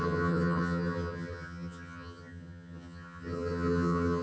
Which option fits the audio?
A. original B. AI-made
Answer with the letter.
B